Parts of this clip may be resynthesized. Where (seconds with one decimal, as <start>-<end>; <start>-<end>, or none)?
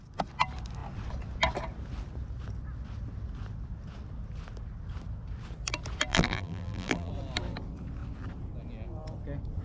6.1-7.1